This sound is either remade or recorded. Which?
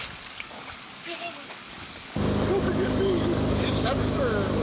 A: remade